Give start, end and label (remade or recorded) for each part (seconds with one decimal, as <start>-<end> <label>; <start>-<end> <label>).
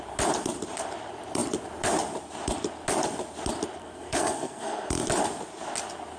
0.0-3.8 recorded; 3.8-4.9 remade; 4.9-6.2 recorded